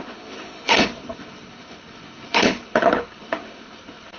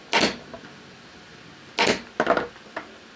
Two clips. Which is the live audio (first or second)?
second